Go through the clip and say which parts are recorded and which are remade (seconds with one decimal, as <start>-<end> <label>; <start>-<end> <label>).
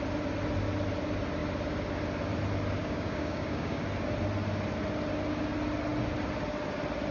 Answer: 0.0-2.8 recorded; 2.8-3.8 remade; 3.8-7.1 recorded